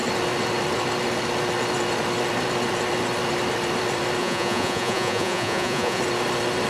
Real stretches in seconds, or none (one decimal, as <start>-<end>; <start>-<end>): 0.0-4.2; 6.0-6.7